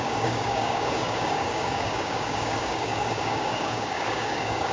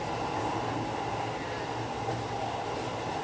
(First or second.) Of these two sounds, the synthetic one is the first